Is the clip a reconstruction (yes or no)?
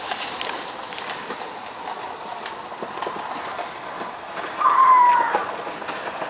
no